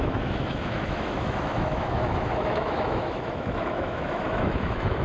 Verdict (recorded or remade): remade